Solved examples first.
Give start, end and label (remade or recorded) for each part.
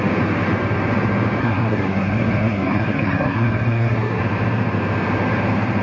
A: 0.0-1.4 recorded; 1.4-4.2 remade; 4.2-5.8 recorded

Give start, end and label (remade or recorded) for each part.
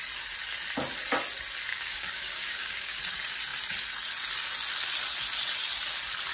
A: 0.0-1.7 recorded; 1.7-3.0 remade; 3.0-6.3 recorded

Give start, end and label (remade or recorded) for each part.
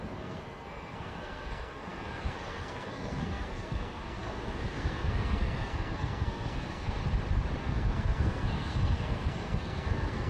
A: 0.0-7.0 remade; 7.0-7.6 recorded; 7.6-10.3 remade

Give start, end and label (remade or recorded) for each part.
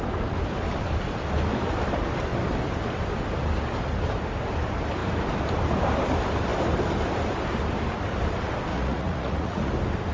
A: 0.0-8.7 recorded; 8.7-9.7 remade; 9.7-10.1 recorded